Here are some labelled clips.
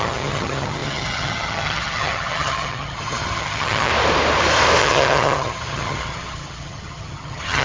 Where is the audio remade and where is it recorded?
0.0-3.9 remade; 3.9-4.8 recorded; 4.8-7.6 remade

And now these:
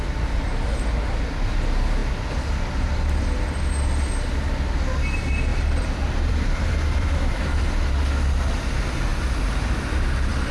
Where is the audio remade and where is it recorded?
0.0-5.5 recorded; 5.5-7.9 remade; 7.9-10.5 recorded

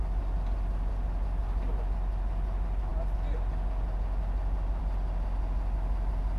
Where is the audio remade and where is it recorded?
0.0-6.4 recorded

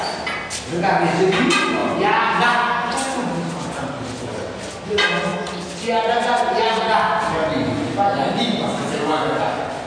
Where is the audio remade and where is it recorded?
0.0-1.8 recorded; 1.8-2.4 remade; 2.4-5.3 recorded; 5.3-6.0 remade; 6.0-9.9 recorded

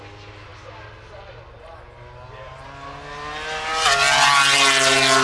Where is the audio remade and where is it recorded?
0.0-5.2 recorded

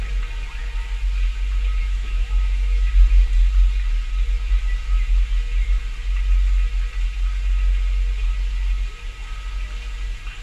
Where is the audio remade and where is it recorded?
0.0-1.8 recorded; 1.8-2.9 remade; 2.9-10.4 recorded